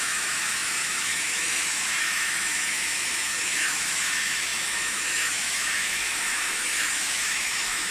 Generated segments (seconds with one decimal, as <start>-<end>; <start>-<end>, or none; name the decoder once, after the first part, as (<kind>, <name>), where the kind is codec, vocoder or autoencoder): 0.0-7.9 (autoencoder, DAC-VAE)